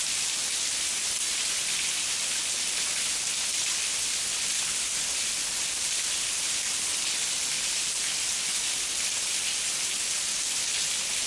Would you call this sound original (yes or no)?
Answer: yes